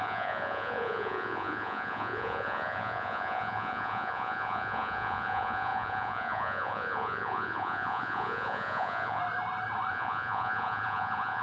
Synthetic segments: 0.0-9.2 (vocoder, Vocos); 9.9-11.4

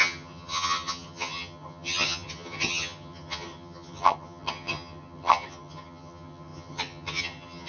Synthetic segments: 0.0-7.7 (vocoder, HiFi-GAN)